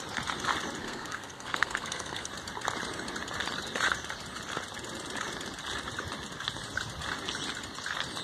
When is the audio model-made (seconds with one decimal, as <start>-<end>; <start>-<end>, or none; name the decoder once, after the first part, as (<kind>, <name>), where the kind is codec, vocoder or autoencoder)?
0.8-2.3 (codec, SNAC)